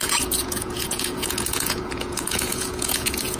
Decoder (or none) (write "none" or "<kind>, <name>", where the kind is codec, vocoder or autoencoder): vocoder, Vocos